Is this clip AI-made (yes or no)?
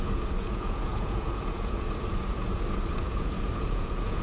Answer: yes